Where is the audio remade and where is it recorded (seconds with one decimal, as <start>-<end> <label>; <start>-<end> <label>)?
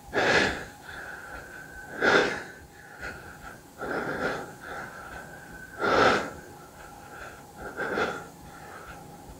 0.0-9.4 recorded